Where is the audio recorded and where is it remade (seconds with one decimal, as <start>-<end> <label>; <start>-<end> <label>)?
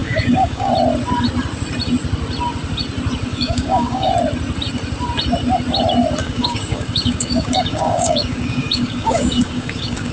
0.0-0.7 remade; 0.7-3.3 recorded; 3.3-4.1 remade; 4.1-6.2 recorded; 6.2-10.1 remade